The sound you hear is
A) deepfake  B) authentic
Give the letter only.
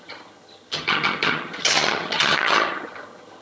A